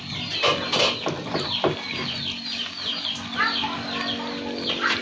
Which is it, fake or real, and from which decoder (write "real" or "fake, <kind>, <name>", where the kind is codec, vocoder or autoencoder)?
real